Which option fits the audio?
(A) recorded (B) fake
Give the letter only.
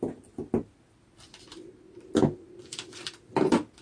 A